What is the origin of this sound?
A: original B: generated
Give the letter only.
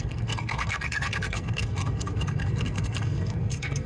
B